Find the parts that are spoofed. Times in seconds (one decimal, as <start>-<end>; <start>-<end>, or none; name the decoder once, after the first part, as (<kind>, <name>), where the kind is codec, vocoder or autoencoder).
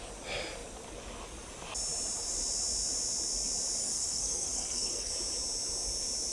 3.8-5.1 (codec, SNAC)